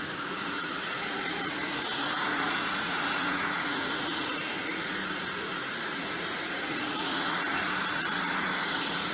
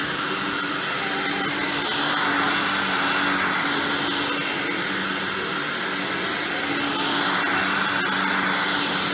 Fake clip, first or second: first